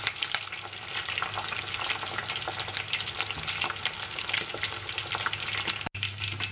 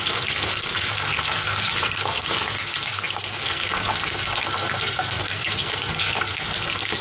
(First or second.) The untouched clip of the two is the first